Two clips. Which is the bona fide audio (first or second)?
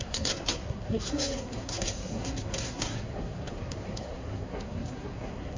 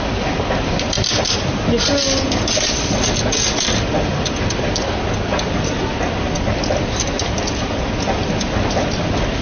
second